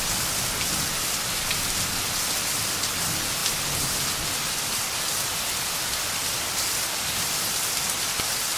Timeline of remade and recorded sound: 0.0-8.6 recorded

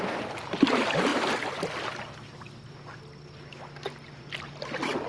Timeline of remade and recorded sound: 0.0-5.1 recorded

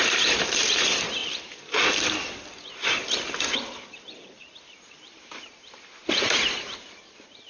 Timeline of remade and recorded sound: 0.0-1.2 remade; 1.2-3.4 recorded; 3.4-7.5 remade

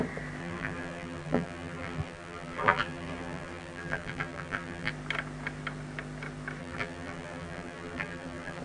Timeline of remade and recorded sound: 0.0-0.4 recorded; 0.4-4.9 remade; 4.9-6.6 recorded; 6.6-8.6 remade

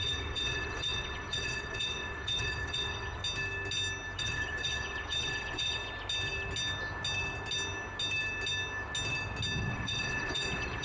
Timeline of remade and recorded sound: 0.0-3.2 remade; 3.2-4.2 recorded; 4.2-5.8 remade; 5.8-9.6 recorded; 9.6-10.8 remade

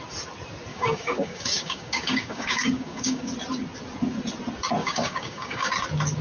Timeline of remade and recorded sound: 0.0-0.7 recorded; 0.7-3.3 remade; 3.3-4.8 recorded; 4.8-5.7 remade; 5.7-6.2 recorded

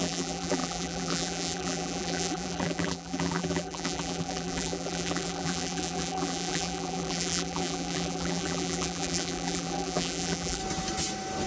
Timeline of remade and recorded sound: 0.0-10.6 remade; 10.6-11.5 recorded